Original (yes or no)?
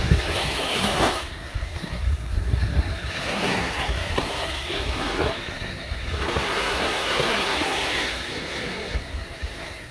no